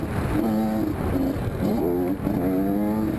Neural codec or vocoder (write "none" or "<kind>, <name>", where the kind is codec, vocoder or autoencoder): none